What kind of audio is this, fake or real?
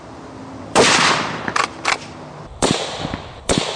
fake